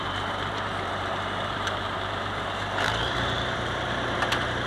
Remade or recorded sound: remade